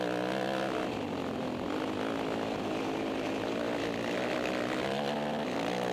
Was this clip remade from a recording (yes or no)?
no